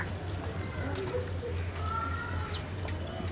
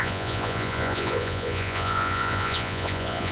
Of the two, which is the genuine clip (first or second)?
first